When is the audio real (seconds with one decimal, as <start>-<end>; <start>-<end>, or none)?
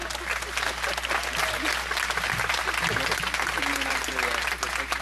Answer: 0.0-5.0